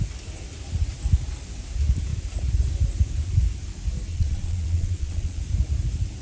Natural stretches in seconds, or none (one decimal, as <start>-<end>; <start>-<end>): 0.0-4.1; 5.4-6.2